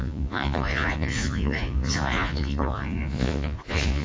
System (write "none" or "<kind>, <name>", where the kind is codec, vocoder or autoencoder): vocoder, Vocos